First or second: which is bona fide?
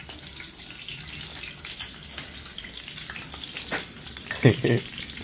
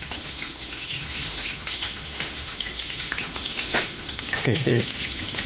first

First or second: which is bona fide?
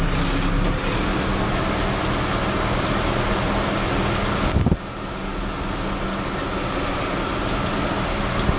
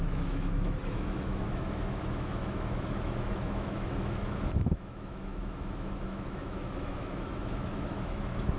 first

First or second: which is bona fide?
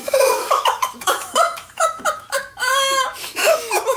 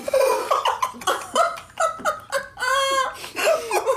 second